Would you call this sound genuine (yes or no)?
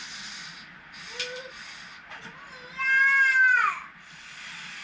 yes